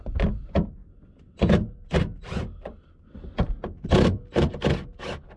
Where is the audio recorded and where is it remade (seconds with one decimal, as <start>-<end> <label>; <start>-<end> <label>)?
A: 0.0-5.4 recorded